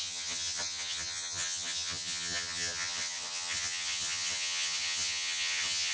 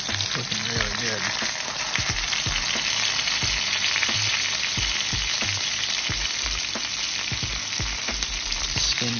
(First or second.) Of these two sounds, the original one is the second